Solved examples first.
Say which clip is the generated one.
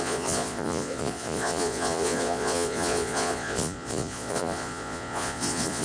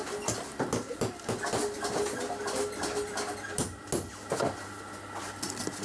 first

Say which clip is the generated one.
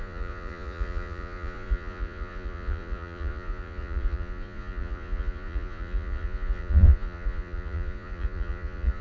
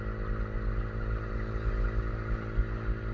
first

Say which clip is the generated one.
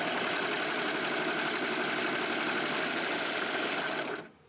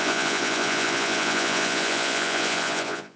second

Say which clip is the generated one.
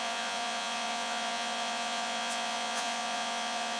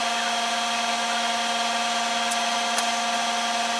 first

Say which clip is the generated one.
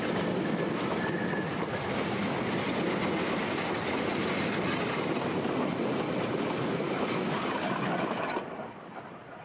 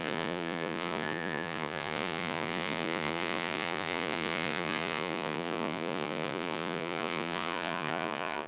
second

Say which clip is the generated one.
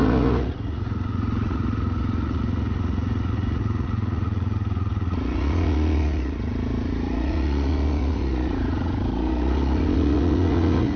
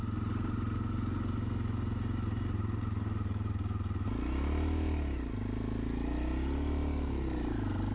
first